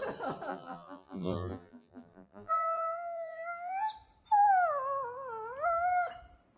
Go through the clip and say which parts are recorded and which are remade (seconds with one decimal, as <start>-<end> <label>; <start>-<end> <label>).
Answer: 0.0-0.5 recorded; 0.5-3.9 remade; 3.9-6.6 recorded